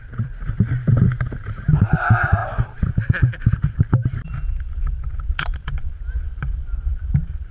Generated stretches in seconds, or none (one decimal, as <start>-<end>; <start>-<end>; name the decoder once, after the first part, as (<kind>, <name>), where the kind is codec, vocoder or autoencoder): none